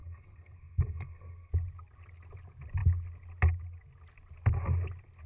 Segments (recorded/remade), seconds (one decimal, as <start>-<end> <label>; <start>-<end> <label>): 0.0-1.5 remade; 1.5-5.3 recorded